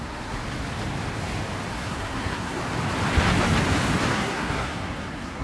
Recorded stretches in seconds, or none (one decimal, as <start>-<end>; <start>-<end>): 0.4-1.7; 2.6-4.1